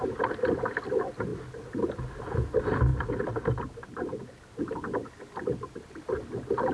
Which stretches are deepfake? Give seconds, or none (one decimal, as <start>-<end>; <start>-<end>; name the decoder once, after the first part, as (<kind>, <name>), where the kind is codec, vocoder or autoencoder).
none